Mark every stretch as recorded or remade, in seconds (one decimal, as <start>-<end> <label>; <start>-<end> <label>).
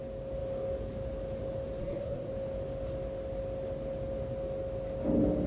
0.0-1.8 recorded; 1.8-2.3 remade; 2.3-5.5 recorded